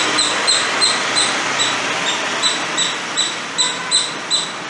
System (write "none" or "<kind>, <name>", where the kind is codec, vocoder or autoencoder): none